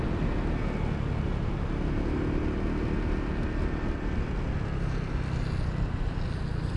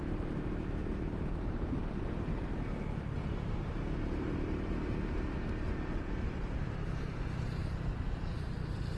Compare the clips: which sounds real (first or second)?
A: first